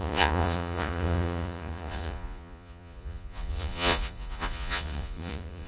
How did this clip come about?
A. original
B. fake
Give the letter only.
B